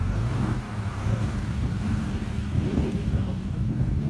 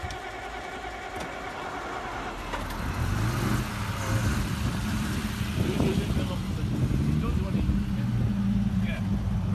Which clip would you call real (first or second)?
second